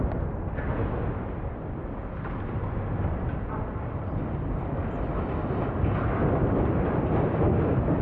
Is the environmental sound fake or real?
real